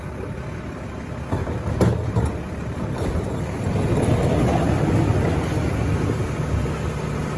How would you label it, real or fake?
real